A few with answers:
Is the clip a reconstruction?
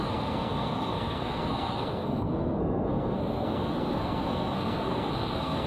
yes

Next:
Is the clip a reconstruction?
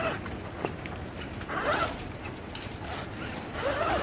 no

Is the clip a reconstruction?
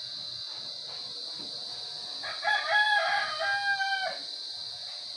no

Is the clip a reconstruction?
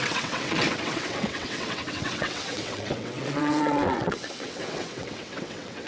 yes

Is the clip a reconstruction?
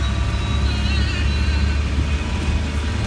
no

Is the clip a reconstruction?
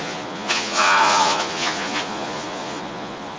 yes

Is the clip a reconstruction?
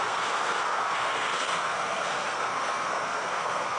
yes